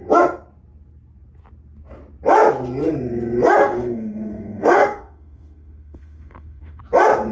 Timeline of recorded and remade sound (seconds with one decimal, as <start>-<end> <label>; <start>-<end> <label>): 0.0-3.6 recorded; 3.6-6.8 remade; 6.8-7.3 recorded